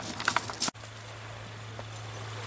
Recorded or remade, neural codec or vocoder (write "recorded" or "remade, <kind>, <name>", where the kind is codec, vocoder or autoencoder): recorded